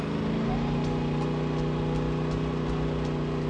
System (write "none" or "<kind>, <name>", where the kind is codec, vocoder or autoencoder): none